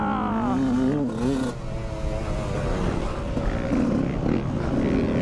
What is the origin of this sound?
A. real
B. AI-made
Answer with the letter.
A